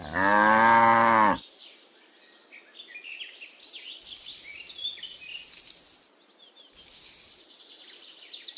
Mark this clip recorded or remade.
recorded